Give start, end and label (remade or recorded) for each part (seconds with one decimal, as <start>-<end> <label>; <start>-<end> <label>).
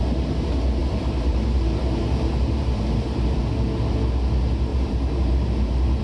0.0-0.8 recorded; 0.8-3.4 remade; 3.4-4.7 recorded; 4.7-6.0 remade